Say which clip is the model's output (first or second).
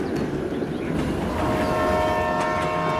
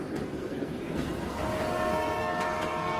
second